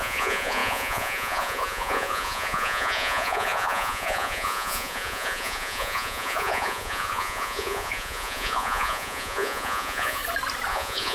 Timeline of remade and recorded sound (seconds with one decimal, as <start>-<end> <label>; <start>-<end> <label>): 0.0-10.2 remade; 10.2-10.7 recorded; 10.7-11.1 remade